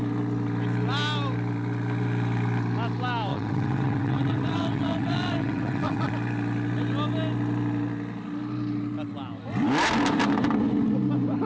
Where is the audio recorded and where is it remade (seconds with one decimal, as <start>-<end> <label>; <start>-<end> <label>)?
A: 0.0-3.3 recorded; 3.3-6.1 remade; 6.1-11.5 recorded